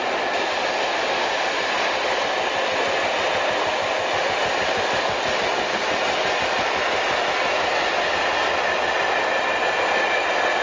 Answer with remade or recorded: recorded